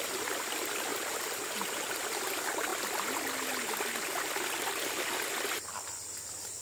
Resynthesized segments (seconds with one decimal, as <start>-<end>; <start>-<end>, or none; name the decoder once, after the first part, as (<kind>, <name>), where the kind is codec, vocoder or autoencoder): none